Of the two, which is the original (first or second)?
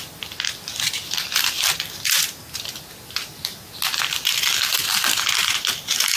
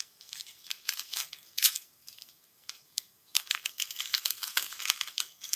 first